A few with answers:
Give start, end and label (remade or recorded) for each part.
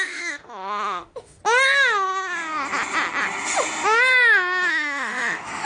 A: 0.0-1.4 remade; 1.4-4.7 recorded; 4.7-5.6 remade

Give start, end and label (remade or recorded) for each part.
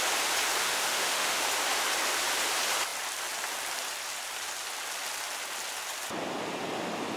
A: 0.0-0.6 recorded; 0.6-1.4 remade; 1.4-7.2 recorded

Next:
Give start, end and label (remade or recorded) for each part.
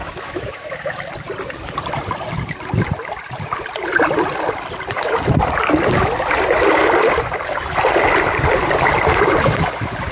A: 0.0-1.0 remade; 1.0-10.1 recorded